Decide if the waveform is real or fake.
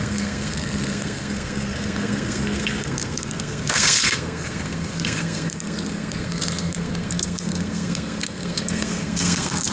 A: fake